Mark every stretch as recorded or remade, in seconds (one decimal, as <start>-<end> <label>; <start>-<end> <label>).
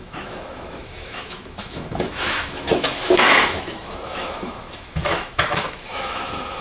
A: 0.0-6.6 remade